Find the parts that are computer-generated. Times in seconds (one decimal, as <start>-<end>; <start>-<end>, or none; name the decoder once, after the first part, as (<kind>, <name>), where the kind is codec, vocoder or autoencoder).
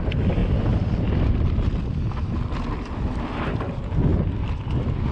4.1-5.1 (vocoder, BigVGAN v2)